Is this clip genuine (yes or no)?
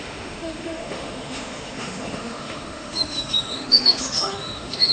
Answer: no